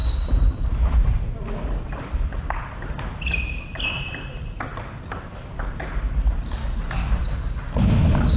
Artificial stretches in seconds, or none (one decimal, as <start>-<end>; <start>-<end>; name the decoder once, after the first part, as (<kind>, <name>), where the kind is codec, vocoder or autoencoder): 6.6-7.2 (vocoder, BigVGAN v2)